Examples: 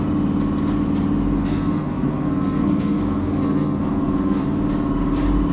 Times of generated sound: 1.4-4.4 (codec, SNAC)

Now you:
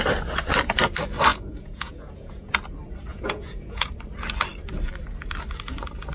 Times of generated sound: 1.3-2.5 (vocoder, Vocos); 3.1-3.9